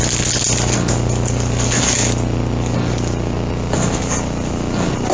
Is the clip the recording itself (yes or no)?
yes